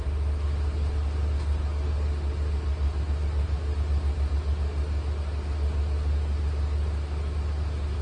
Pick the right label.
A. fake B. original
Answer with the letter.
B